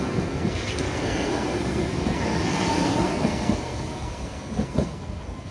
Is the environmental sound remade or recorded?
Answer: remade